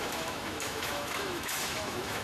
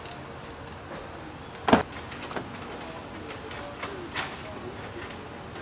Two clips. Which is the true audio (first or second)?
second